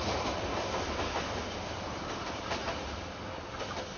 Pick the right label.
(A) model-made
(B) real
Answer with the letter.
B